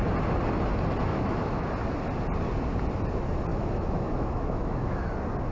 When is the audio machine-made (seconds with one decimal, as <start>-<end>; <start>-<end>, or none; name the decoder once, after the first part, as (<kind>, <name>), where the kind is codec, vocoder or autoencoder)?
1.1-1.7 (autoencoder, DAC-VAE); 3.5-5.1